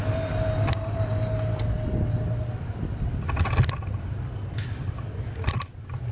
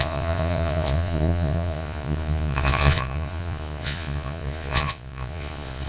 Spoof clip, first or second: second